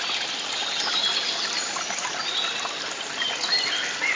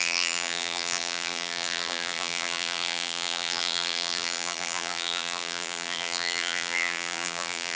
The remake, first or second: second